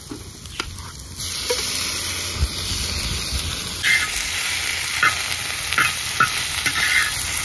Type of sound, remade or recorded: recorded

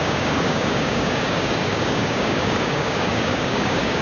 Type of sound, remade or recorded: remade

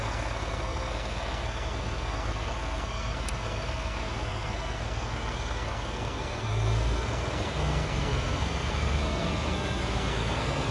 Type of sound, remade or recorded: remade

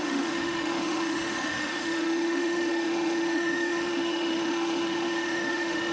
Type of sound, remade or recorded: remade